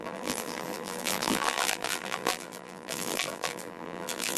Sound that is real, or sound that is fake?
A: fake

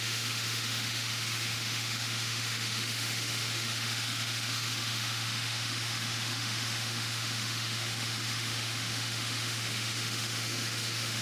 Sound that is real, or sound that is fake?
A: fake